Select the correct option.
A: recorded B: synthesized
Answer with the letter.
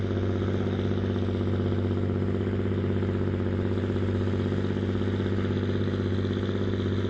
A